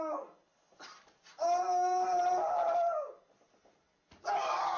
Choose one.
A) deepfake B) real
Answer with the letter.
B